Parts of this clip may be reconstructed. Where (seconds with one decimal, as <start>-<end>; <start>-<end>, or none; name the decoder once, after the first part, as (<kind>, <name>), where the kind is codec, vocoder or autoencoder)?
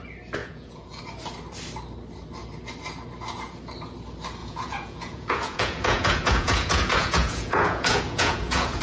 0.4-1.0 (vocoder, Vocos); 4.4-8.8